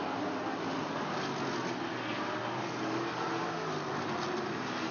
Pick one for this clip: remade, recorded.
recorded